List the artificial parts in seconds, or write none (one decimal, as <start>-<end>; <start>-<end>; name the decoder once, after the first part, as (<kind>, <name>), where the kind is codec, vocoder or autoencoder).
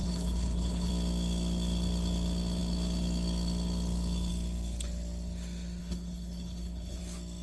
0.0-0.9 (codec, HILCodec); 5.8-7.0